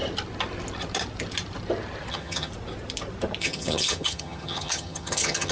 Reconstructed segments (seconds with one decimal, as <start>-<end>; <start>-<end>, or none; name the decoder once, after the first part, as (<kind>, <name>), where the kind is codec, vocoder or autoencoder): 2.1-2.5 (vocoder, HiFi-GAN); 3.4-5.5